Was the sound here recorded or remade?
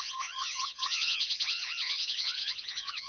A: remade